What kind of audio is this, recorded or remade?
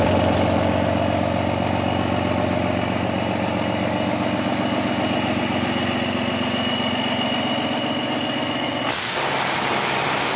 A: recorded